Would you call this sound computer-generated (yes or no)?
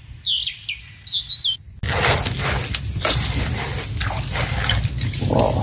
no